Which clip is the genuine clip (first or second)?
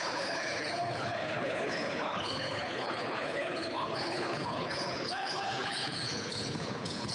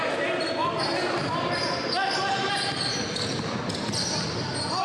second